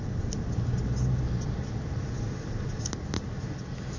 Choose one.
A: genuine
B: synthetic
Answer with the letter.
A